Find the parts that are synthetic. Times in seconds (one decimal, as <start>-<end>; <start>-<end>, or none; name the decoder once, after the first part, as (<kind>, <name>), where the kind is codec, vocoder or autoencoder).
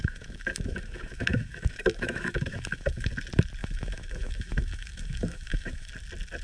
0.0-3.1 (autoencoder, DAC-VAE); 3.6-5.9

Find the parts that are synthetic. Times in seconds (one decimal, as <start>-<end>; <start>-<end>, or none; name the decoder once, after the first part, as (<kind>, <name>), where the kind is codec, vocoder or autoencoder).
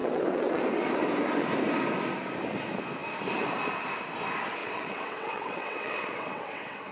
0.0-0.6 (vocoder, WaveNeXt); 4.6-6.9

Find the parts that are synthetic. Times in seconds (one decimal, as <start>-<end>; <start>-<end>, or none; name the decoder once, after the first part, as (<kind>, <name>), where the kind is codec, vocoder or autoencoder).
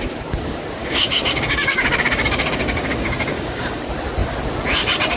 0.8-3.8 (codec, DAC)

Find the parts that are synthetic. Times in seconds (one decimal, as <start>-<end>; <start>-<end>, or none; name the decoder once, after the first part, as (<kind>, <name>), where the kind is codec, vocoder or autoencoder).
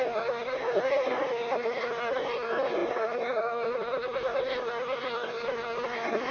0.0-6.3 (codec, SNAC)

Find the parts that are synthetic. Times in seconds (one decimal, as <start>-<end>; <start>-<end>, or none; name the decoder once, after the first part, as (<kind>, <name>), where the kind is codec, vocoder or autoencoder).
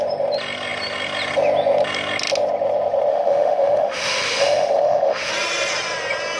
3.1-5.3 (autoencoder, DAC-VAE)